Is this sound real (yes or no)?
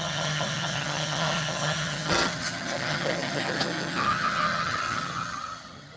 no